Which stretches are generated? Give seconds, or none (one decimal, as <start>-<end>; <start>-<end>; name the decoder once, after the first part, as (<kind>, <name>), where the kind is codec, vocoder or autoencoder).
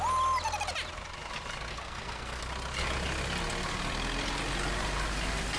1.7-2.4 (codec, SNAC)